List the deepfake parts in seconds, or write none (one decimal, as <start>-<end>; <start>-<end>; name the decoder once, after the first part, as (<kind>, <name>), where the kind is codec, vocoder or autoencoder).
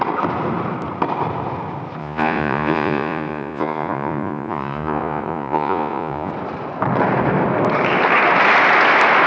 2.0-6.3 (vocoder, Vocos)